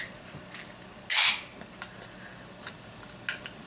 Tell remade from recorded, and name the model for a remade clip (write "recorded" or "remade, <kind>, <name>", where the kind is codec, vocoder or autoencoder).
recorded